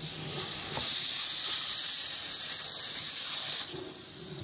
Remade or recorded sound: recorded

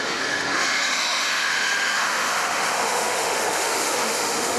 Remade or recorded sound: remade